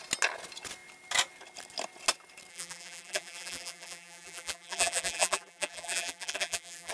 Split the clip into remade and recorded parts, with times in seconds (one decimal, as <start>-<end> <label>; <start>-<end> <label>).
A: 0.0-2.5 recorded; 2.5-6.9 remade